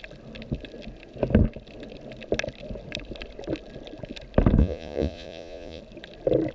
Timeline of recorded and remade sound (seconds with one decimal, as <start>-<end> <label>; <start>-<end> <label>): 0.0-4.6 recorded; 4.6-5.8 remade; 5.8-6.5 recorded